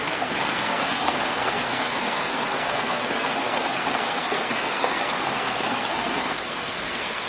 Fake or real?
fake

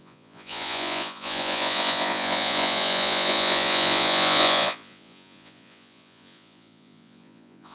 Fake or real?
fake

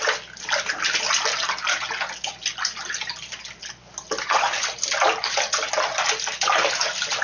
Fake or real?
real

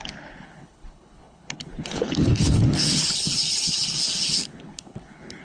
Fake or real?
fake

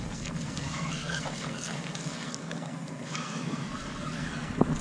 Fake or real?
fake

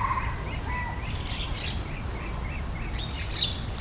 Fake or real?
real